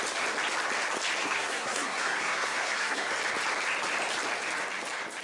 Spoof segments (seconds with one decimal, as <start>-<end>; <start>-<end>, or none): 1.2-3.1